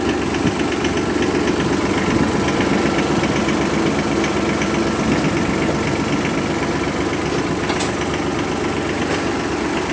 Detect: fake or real real